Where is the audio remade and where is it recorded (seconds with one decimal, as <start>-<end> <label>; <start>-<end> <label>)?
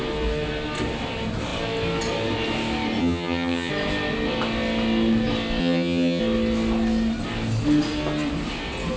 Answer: 0.0-3.0 recorded; 3.0-3.7 remade; 3.7-5.6 recorded; 5.6-6.2 remade; 6.2-9.0 recorded